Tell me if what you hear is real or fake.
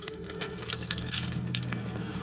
fake